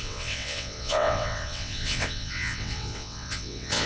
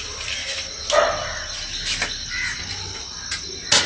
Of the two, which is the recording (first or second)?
second